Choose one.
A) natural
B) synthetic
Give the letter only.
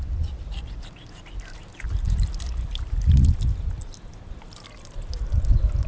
A